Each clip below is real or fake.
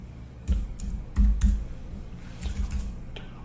fake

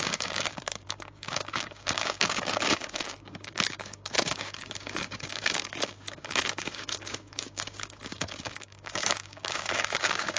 fake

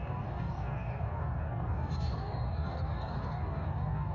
fake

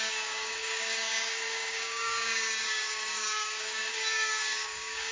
fake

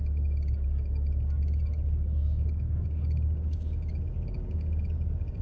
fake